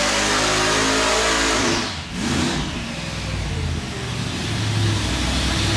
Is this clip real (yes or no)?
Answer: yes